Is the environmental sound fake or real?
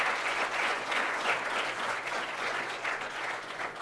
fake